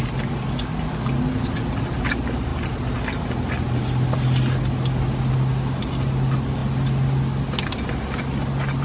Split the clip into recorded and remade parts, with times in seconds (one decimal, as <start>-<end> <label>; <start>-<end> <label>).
0.0-8.8 recorded